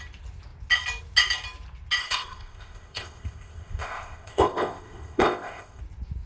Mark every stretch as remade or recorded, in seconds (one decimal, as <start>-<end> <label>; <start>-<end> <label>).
0.0-2.0 recorded; 2.0-5.8 remade; 5.8-6.3 recorded